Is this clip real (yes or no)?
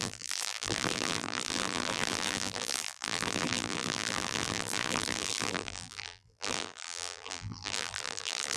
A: no